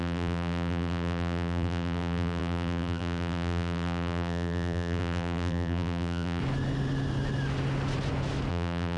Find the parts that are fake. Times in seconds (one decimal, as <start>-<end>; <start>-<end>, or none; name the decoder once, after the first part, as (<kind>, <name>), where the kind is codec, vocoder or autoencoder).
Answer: 0.0-6.4 (vocoder, BigVGAN v2); 8.5-9.0